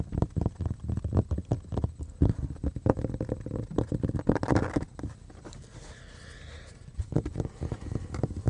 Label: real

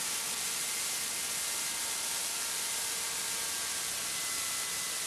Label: real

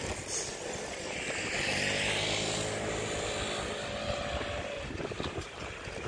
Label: real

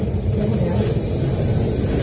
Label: real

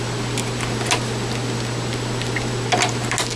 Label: real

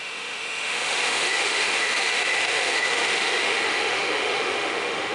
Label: fake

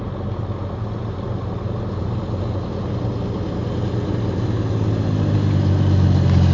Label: real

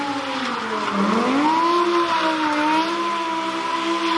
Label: real